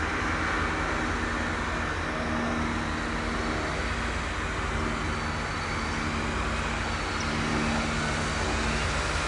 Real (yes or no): yes